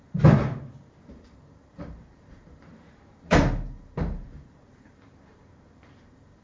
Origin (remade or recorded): remade